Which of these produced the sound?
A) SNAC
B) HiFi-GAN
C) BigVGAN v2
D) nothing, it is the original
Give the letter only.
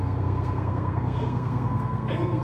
A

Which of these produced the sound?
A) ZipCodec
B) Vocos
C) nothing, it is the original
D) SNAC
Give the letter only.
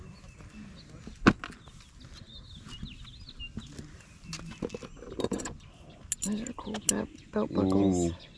C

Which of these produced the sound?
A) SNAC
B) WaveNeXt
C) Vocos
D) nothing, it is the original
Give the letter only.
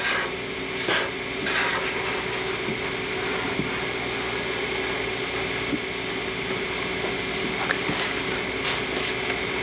D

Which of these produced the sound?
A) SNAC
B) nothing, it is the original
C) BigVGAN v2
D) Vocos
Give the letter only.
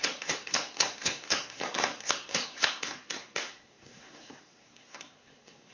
A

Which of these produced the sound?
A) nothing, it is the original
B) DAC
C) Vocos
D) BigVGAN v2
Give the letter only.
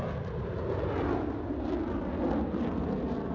A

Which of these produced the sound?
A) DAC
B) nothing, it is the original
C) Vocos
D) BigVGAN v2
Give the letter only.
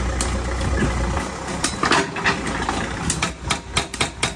B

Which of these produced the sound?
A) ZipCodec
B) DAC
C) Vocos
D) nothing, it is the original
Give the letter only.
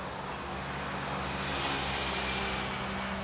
D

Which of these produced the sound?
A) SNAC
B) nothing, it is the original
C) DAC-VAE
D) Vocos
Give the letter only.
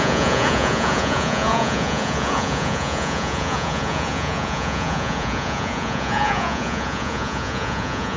D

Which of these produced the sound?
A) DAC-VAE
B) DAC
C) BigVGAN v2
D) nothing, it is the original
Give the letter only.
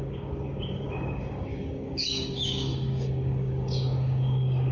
B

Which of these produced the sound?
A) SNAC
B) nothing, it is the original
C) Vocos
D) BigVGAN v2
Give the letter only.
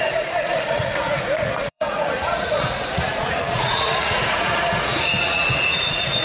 C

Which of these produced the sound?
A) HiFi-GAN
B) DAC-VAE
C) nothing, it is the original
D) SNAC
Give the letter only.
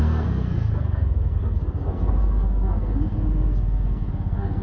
D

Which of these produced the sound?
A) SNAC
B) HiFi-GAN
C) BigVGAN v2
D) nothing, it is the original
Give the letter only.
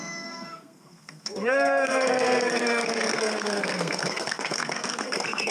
A